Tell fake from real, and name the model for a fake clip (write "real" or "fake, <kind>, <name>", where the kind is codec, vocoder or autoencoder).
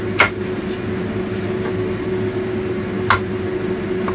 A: real